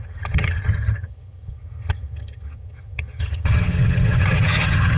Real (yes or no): no